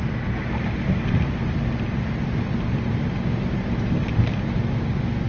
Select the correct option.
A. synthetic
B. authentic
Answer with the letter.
B